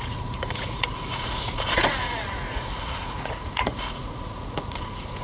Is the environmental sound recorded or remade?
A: remade